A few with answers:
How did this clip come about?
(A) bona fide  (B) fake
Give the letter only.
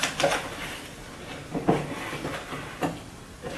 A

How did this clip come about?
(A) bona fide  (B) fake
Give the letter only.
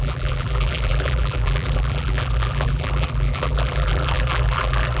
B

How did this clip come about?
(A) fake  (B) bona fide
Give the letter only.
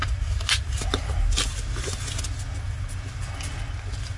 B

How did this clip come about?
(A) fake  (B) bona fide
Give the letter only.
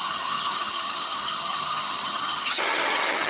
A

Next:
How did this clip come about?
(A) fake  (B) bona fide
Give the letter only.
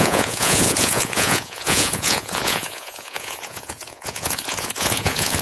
A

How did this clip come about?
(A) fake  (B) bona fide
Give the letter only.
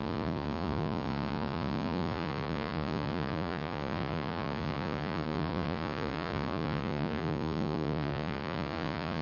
A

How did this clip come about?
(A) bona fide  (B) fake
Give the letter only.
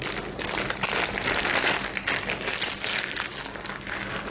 A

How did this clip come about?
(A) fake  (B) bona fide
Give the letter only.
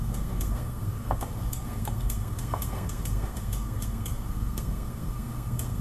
A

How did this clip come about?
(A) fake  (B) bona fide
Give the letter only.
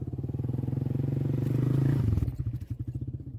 A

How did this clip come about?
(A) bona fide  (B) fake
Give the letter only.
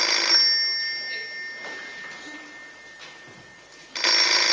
A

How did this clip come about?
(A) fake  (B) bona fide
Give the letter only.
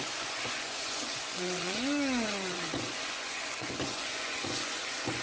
A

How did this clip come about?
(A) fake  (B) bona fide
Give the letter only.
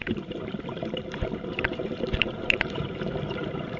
A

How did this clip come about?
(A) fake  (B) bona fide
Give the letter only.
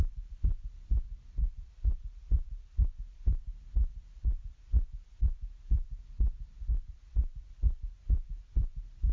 B